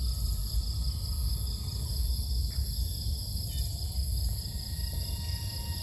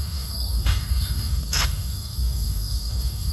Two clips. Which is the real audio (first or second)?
first